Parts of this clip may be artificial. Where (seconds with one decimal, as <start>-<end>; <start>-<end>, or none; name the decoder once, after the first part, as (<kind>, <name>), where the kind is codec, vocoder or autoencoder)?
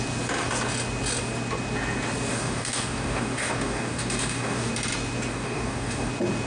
2.3-4.7 (codec, DAC); 5.3-6.1